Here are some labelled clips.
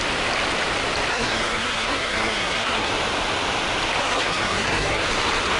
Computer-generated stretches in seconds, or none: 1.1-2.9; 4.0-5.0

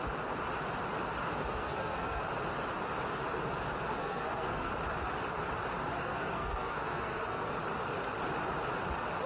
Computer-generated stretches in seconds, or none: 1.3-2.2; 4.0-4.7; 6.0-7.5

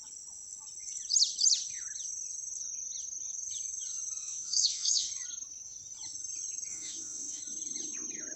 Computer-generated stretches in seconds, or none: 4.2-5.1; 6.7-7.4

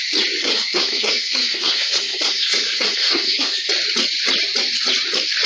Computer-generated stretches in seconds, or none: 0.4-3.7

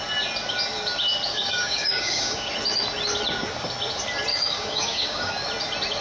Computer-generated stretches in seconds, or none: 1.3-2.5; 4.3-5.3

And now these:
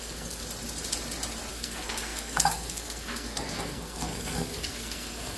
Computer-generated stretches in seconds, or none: 0.0-0.4; 1.5-5.4